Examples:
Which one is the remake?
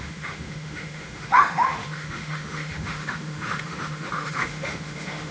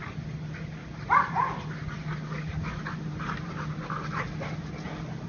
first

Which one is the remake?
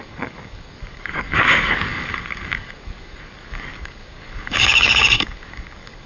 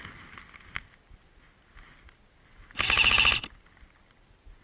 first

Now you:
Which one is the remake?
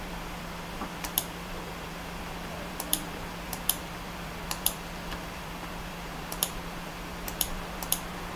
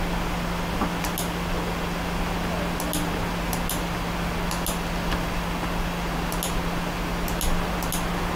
first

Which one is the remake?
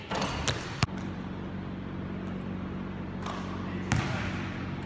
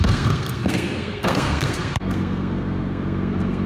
second